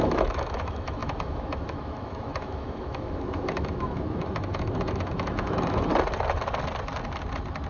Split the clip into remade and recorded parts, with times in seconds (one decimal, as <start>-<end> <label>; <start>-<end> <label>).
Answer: 0.0-5.9 remade; 5.9-7.7 recorded